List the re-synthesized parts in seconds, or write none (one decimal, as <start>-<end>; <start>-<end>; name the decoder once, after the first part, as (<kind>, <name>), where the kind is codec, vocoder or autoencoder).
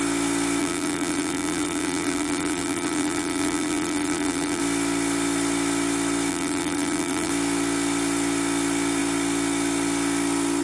0.6-4.6 (vocoder, BigVGAN v2); 6.3-7.3